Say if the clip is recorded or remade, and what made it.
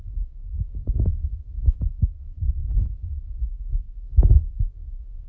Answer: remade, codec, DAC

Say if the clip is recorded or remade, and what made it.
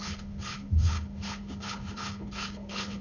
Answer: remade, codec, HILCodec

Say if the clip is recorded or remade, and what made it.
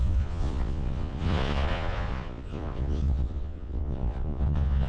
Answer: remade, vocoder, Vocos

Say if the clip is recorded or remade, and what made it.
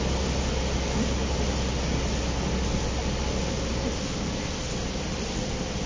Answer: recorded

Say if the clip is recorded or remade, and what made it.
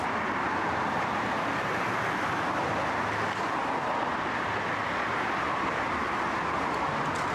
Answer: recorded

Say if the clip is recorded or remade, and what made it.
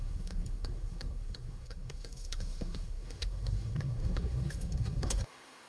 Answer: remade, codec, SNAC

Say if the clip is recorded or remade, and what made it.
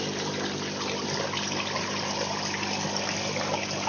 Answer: recorded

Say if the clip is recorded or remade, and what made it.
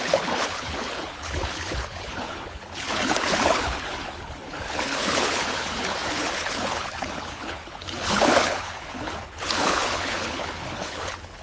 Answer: remade, codec, HILCodec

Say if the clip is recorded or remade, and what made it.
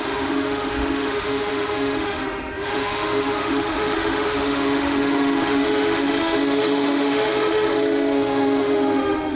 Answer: remade, autoencoder, DAC-VAE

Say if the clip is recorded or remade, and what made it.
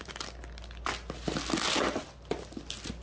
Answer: recorded